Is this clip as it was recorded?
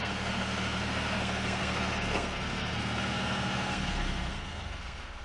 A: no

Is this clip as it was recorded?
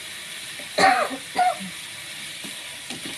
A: no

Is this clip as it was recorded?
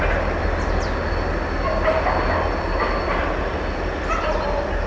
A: yes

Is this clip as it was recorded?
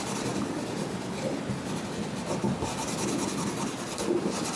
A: yes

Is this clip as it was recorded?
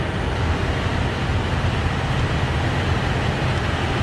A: yes